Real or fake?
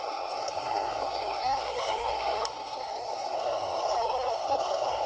fake